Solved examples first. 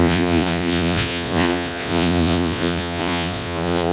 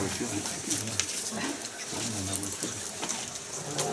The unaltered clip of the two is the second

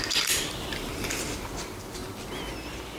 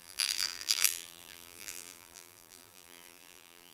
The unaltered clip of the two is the first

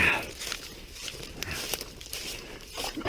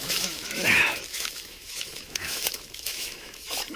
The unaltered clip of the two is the first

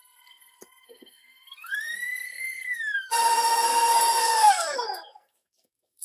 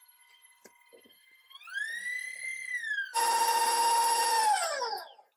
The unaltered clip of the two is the second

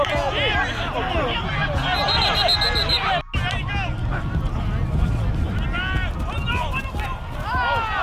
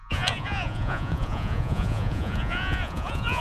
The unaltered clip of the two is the first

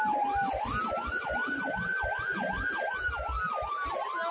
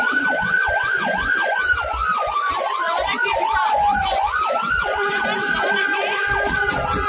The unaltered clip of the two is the first